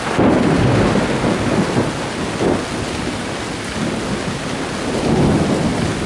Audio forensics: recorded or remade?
recorded